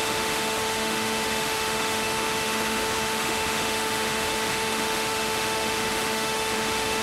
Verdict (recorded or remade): remade